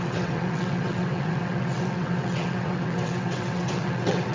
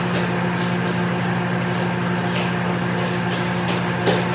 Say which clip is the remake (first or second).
first